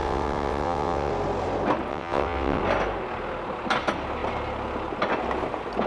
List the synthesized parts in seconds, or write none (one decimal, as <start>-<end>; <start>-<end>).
0.0-1.1; 1.9-2.6